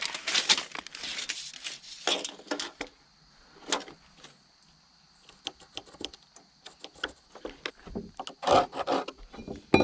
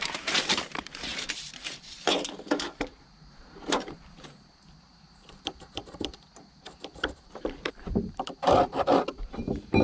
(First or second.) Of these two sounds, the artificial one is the second